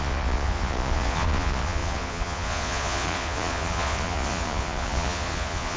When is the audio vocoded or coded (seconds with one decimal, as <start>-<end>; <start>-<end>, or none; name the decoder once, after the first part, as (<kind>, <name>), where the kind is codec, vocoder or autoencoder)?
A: 0.0-5.8 (vocoder, Vocos)